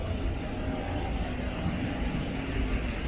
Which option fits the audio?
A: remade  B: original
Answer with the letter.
B